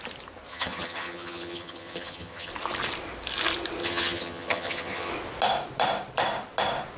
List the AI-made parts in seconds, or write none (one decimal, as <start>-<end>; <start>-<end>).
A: 0.5-2.5; 3.8-5.1